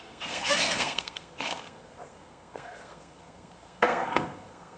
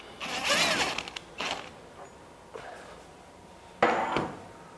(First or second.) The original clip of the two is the second